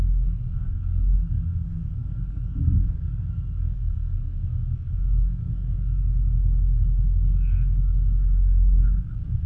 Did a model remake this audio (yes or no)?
yes